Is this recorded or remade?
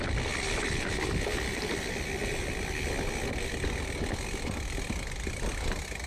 recorded